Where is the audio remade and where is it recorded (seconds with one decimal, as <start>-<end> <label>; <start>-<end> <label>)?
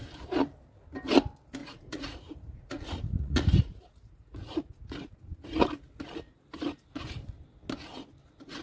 0.0-1.6 recorded; 1.6-4.8 remade; 4.8-8.6 recorded